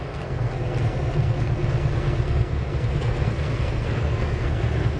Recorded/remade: remade